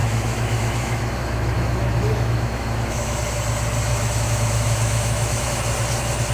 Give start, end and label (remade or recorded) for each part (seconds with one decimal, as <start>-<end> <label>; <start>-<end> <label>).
0.0-3.2 remade; 3.2-3.9 recorded; 3.9-5.6 remade; 5.6-6.3 recorded